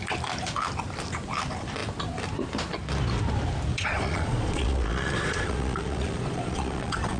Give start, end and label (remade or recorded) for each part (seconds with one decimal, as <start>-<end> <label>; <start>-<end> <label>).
0.0-3.7 recorded; 3.7-7.2 remade